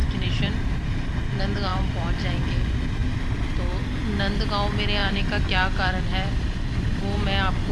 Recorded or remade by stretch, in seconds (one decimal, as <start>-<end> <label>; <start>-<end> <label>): 0.0-1.2 remade; 1.2-1.7 recorded; 1.7-2.3 remade; 2.3-3.0 recorded; 3.0-3.6 remade; 3.6-5.0 recorded; 5.0-7.0 remade; 7.0-7.7 recorded